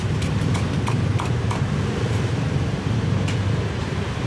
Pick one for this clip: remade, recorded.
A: remade